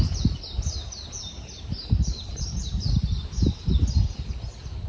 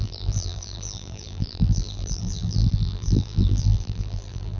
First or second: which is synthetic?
second